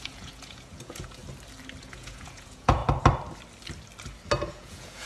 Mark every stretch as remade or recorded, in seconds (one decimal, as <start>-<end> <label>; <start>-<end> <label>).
0.0-1.2 remade; 1.2-1.8 recorded; 1.8-2.8 remade; 2.8-4.5 recorded; 4.5-5.1 remade